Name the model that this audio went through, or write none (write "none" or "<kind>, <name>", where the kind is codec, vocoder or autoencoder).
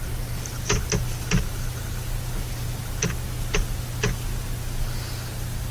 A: none